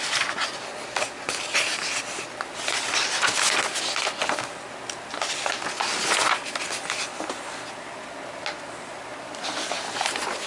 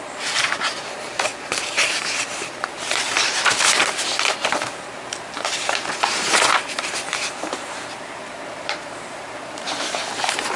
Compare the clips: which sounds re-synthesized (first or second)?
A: second